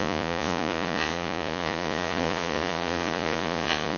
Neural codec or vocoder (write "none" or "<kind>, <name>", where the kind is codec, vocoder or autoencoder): vocoder, Vocos